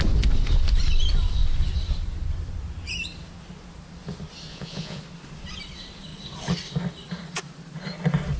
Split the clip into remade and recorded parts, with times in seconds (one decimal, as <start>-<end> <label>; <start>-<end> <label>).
0.0-4.5 recorded; 4.5-5.0 remade; 5.0-8.4 recorded